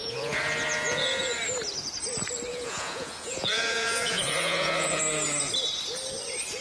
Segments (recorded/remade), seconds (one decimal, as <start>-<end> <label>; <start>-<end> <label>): 0.0-1.4 remade; 1.4-2.5 recorded; 2.5-5.0 remade; 5.0-6.6 recorded